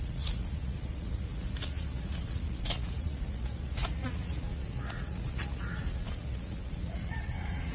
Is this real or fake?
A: fake